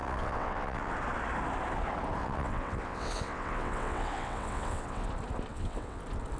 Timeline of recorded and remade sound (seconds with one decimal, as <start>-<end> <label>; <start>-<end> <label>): 0.0-0.9 remade; 0.9-2.2 recorded; 2.2-5.1 remade; 5.1-5.5 recorded; 5.5-6.0 remade; 6.0-6.4 recorded